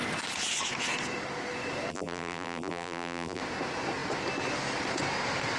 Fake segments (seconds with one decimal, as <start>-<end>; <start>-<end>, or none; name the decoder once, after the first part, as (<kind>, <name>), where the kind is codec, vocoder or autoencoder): 1.9-3.4 (vocoder, BigVGAN v2)